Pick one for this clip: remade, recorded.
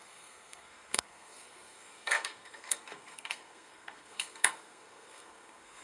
remade